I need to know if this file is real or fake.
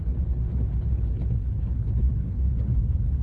fake